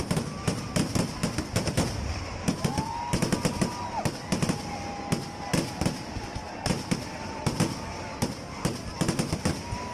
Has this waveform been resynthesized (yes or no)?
no